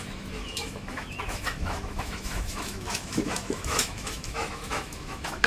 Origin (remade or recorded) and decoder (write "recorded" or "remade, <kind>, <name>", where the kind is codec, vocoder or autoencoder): remade, autoencoder, DAC-VAE